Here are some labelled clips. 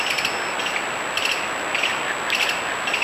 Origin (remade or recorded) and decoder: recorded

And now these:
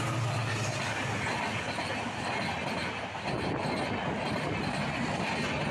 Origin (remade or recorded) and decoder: recorded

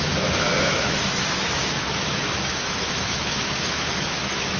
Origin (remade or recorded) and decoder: remade, autoencoder, DAC-VAE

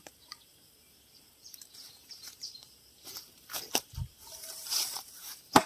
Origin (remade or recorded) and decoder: remade, vocoder, BigVGAN v2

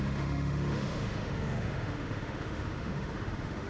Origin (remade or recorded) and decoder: remade, autoencoder, DAC-VAE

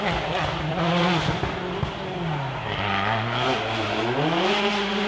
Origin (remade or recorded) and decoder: recorded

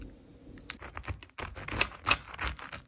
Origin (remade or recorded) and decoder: recorded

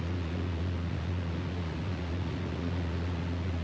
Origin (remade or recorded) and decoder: remade, vocoder, Vocos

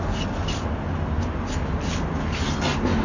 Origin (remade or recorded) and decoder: recorded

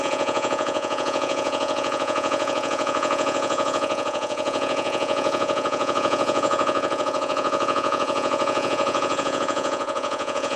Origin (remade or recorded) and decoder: remade, vocoder, Vocos